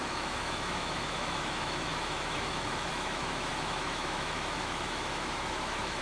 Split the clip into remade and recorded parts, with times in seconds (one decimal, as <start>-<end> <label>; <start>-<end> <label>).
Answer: 0.0-6.0 remade